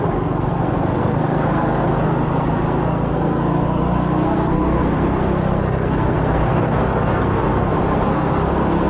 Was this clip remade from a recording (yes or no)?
yes